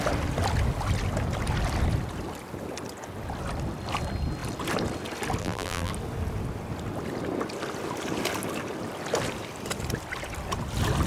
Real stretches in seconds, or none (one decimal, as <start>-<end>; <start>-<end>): 0.0-5.4; 5.9-11.1